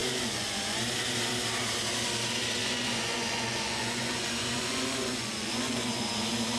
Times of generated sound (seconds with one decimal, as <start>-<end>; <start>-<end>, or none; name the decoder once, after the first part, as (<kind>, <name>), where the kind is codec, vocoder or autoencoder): 0.0-0.8 (vocoder, Vocos); 2.6-6.1

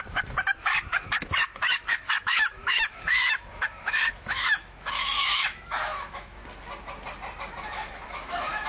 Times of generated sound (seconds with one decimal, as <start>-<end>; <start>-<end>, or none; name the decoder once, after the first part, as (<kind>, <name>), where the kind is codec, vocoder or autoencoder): 0.0-6.4 (autoencoder, DAC-VAE); 7.6-8.7

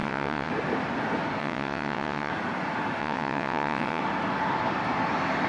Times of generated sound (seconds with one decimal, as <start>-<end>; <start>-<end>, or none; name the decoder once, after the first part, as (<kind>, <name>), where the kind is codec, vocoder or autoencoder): 0.0-0.5 (vocoder, WaveNeXt); 1.4-2.3; 3.0-4.0

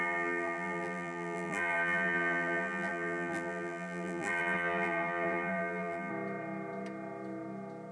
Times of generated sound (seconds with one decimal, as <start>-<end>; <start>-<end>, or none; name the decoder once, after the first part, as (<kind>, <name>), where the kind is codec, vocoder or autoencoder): 0.0-6.1 (vocoder, BigVGAN v2)

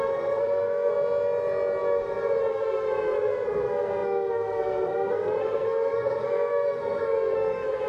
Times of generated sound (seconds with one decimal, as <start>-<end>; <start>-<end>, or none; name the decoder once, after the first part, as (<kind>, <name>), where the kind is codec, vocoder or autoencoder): 0.0-0.9 (codec, SNAC); 2.5-7.9